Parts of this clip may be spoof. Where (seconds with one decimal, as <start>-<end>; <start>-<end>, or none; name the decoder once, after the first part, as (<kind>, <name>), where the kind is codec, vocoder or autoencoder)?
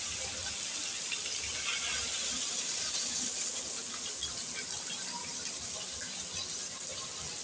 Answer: 5.2-5.9 (vocoder, BigVGAN v2)